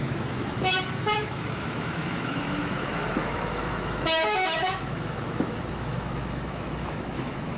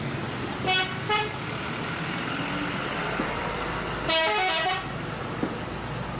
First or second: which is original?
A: second